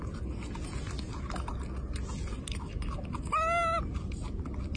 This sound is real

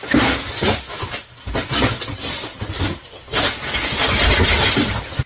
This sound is real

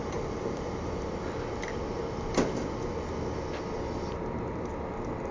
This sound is real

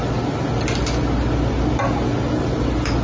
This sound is real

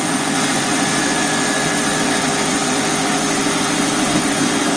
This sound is fake